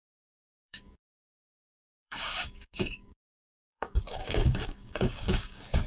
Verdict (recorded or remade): remade